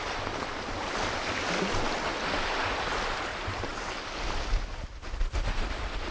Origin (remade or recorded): remade